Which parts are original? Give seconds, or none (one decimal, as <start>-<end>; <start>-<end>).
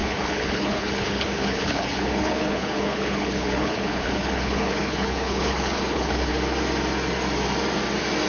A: 6.3-8.3